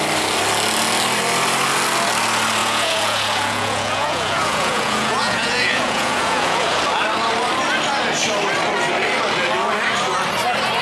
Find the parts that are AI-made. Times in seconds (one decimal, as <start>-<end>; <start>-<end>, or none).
2.6-6.8